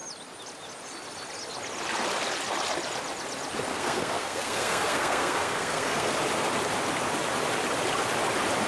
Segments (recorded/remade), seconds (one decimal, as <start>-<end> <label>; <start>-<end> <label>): 0.0-3.7 recorded; 3.7-6.1 remade; 6.1-8.7 recorded

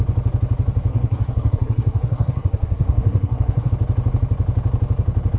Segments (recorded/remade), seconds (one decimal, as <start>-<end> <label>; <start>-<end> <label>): 0.0-0.9 recorded; 0.9-3.7 remade; 3.7-5.4 recorded

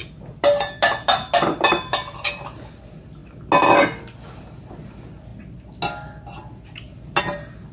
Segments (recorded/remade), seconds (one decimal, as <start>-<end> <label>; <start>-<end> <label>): 0.0-7.7 recorded

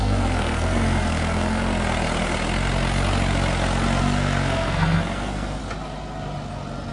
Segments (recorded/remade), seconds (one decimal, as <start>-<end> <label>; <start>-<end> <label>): 0.0-1.7 remade; 1.7-4.0 recorded; 4.0-5.6 remade; 5.6-6.9 recorded

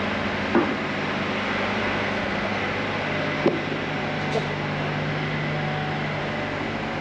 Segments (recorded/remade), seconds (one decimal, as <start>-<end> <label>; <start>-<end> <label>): 0.0-1.8 recorded; 1.8-2.6 remade; 2.6-7.0 recorded

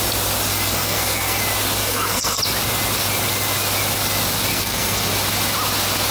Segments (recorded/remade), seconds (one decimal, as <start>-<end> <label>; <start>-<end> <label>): 0.0-0.5 recorded; 0.5-1.4 remade; 1.4-1.8 recorded; 1.8-2.4 remade; 2.4-4.5 recorded; 4.5-5.1 remade; 5.1-6.1 recorded